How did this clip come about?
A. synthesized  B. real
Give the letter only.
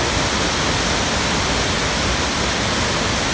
B